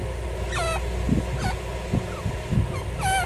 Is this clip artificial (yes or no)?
no